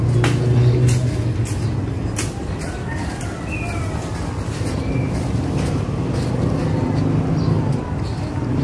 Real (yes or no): yes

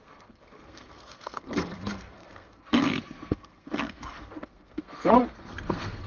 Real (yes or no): no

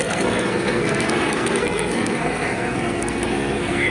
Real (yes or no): no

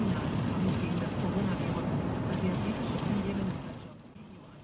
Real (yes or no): yes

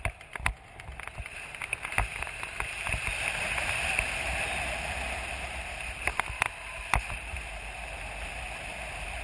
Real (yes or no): yes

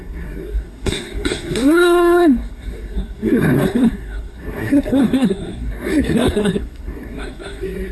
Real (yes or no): no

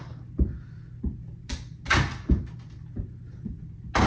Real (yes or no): yes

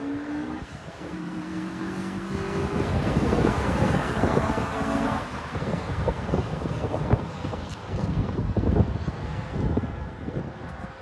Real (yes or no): no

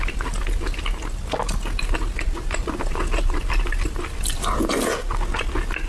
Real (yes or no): yes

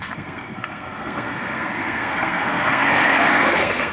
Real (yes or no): no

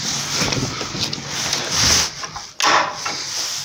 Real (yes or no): yes